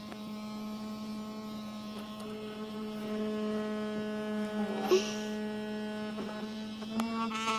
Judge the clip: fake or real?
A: real